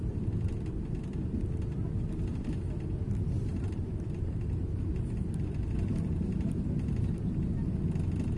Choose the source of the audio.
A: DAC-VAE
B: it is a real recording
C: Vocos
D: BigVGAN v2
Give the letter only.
D